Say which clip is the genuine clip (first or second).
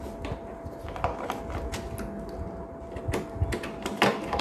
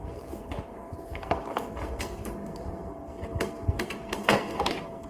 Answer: first